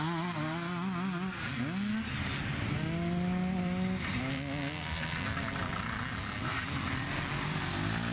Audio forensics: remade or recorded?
recorded